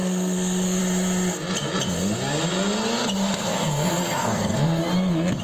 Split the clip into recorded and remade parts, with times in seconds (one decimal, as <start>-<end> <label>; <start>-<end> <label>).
0.0-0.8 remade; 0.8-3.5 recorded; 3.5-4.8 remade; 4.8-5.4 recorded